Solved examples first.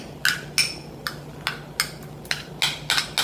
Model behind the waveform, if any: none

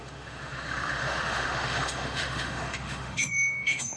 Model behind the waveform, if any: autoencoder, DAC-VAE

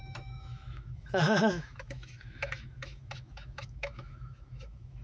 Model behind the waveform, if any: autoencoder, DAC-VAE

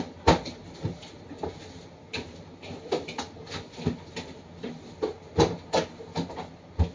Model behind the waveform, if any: none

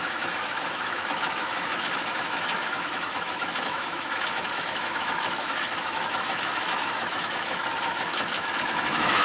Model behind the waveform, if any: autoencoder, DAC-VAE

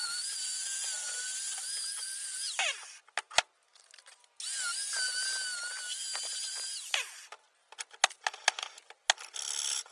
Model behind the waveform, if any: none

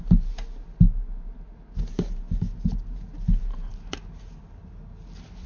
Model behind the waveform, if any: none